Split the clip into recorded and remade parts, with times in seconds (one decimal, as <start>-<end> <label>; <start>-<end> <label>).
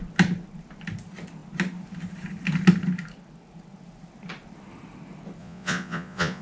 0.0-5.4 recorded; 5.4-6.4 remade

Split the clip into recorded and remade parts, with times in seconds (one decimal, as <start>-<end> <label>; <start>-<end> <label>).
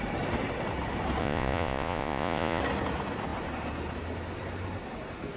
0.0-1.2 recorded; 1.2-2.6 remade; 2.6-5.4 recorded